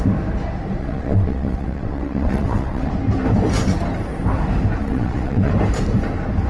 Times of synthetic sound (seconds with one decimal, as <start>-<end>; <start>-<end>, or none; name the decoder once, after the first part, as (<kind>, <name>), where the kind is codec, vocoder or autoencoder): 0.8-2.9 (vocoder, WaveNeXt); 4.8-5.5